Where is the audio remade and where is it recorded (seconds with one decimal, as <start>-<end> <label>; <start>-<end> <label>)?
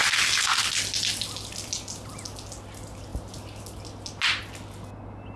0.0-5.4 recorded